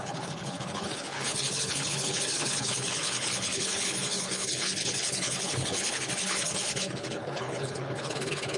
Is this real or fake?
fake